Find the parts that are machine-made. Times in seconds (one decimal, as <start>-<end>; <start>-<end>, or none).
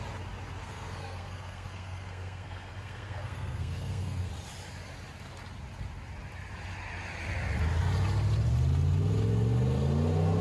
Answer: 0.6-4.3